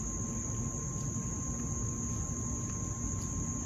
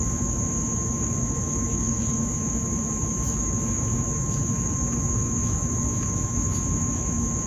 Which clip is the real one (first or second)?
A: first